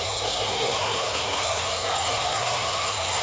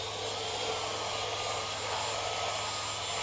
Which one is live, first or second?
second